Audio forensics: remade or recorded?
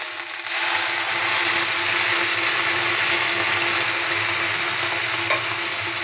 recorded